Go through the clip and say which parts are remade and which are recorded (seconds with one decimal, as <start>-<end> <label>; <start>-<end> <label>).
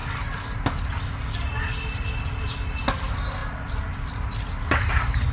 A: 0.0-5.3 recorded